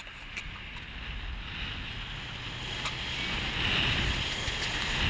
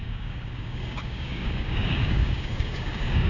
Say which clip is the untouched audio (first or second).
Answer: first